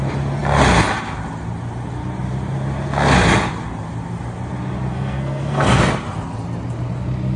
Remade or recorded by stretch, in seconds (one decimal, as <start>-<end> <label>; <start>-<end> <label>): 0.0-4.9 recorded; 4.9-5.8 remade; 5.8-7.4 recorded